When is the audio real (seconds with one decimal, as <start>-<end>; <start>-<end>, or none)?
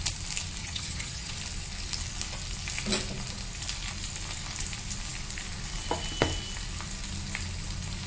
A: 0.0-0.6; 1.3-8.1